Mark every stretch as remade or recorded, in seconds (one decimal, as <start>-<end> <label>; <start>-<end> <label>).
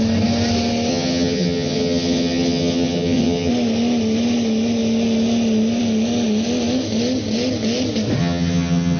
0.0-0.9 recorded; 0.9-3.5 remade; 3.5-8.2 recorded; 8.2-9.0 remade